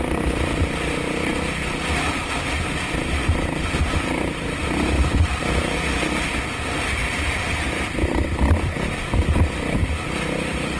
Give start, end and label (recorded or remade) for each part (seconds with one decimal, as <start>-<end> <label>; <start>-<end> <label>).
0.0-10.8 recorded